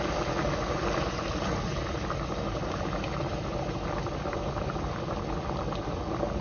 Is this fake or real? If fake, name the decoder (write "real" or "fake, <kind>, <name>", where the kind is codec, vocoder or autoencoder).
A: real